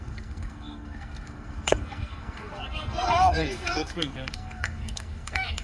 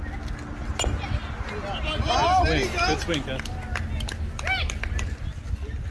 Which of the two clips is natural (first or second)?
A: second